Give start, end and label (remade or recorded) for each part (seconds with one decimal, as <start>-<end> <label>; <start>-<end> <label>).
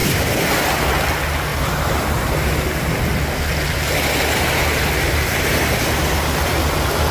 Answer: 0.0-1.5 recorded; 1.5-2.5 remade; 2.5-7.1 recorded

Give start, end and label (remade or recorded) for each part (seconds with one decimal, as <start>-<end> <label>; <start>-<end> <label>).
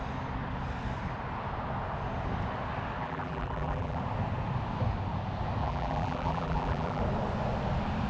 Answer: 0.0-3.0 recorded; 3.0-4.0 remade; 4.0-5.6 recorded; 5.6-7.0 remade; 7.0-8.1 recorded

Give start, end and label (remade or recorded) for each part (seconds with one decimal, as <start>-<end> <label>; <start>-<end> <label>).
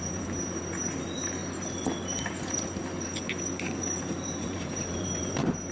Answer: 0.0-1.4 remade; 1.4-4.0 recorded; 4.0-5.7 remade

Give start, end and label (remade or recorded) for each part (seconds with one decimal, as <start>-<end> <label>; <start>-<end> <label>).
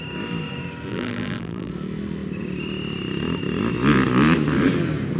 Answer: 0.0-0.9 recorded; 0.9-1.7 remade; 1.7-5.2 recorded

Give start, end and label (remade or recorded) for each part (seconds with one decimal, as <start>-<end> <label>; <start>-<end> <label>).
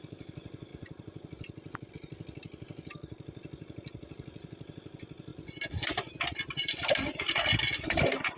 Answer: 0.0-0.7 recorded; 0.7-1.9 remade; 1.9-8.4 recorded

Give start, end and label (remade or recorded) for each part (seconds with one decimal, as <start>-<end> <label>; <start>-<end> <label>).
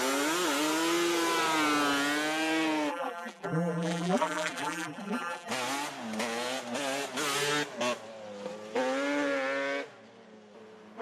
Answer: 0.0-2.9 recorded; 2.9-5.5 remade; 5.5-11.0 recorded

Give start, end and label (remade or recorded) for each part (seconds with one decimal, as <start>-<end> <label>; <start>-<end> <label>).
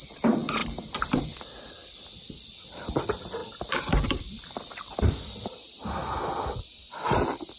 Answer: 0.0-0.6 recorded; 0.6-3.0 remade; 3.0-3.4 recorded; 3.4-5.1 remade; 5.1-7.6 recorded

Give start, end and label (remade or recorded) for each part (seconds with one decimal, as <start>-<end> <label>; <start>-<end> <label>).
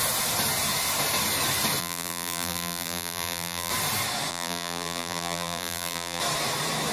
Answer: 0.0-1.8 recorded; 1.8-3.7 remade; 3.7-4.3 recorded; 4.3-6.2 remade; 6.2-6.9 recorded